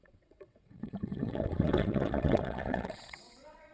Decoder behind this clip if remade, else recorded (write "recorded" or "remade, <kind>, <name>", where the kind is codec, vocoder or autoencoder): remade, vocoder, WaveNeXt